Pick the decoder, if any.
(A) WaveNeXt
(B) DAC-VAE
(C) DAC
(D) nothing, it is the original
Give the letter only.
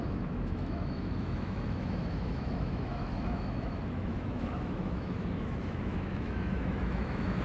B